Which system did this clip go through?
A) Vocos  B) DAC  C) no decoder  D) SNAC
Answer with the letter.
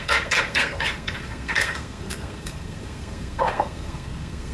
D